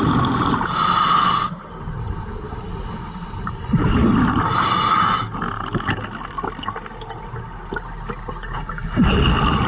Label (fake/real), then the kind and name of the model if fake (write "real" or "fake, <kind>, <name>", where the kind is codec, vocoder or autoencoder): real